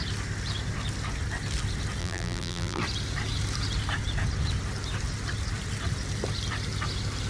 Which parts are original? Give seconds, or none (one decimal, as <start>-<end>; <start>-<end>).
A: 0.0-2.0; 2.8-7.3